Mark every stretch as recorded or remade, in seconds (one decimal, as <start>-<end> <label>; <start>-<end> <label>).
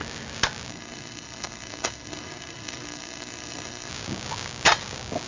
0.0-0.7 recorded; 0.7-3.9 remade; 3.9-5.3 recorded